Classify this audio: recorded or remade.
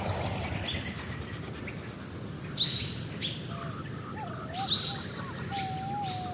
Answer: recorded